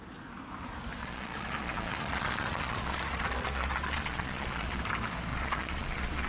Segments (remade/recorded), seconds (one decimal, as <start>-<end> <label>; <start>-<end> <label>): 0.0-1.0 recorded; 1.0-4.8 remade; 4.8-5.3 recorded; 5.3-6.3 remade